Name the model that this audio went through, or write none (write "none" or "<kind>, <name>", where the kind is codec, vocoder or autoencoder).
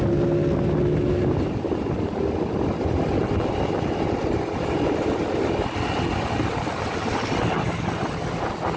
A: none